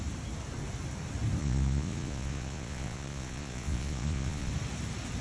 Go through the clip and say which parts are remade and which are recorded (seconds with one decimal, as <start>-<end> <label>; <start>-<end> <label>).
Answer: 0.0-1.4 recorded; 1.4-4.5 remade; 4.5-5.2 recorded